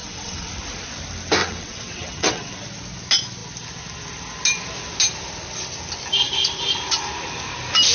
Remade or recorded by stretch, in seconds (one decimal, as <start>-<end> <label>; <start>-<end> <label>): 0.0-0.5 remade; 0.5-1.4 recorded; 1.4-2.5 remade; 2.5-7.9 recorded